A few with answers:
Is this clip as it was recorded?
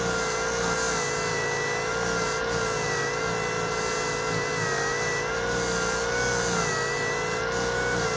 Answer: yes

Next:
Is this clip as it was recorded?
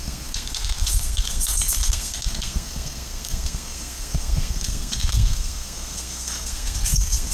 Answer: no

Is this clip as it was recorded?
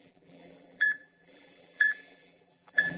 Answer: no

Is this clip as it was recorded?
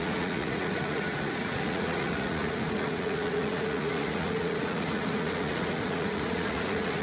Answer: no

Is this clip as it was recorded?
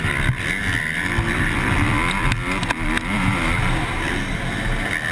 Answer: yes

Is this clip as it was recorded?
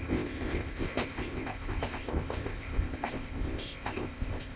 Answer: no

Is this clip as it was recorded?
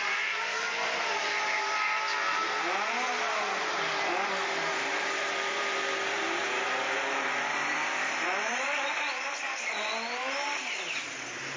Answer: no